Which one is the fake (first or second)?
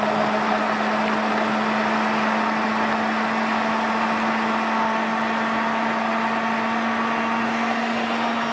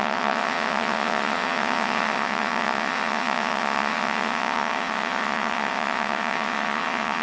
second